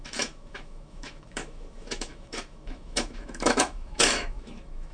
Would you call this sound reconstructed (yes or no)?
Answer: yes